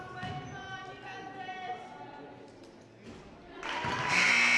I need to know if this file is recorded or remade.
recorded